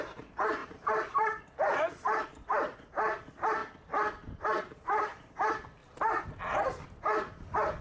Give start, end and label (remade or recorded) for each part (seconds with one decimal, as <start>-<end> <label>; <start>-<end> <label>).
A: 0.0-3.6 remade; 3.6-4.7 recorded; 4.7-5.8 remade; 5.8-6.4 recorded; 6.4-7.8 remade